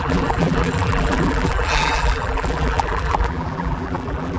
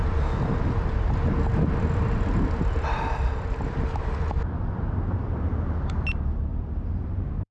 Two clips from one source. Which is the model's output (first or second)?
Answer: first